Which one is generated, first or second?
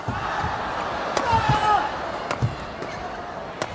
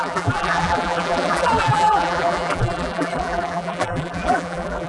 second